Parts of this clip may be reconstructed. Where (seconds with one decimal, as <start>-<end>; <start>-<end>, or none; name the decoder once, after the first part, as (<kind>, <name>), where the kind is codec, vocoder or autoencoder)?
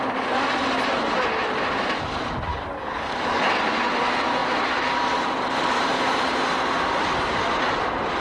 2.5-3.5 (codec, DAC)